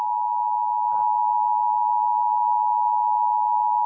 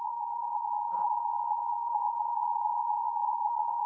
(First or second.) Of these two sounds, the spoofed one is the second